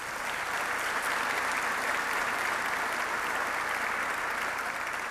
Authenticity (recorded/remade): recorded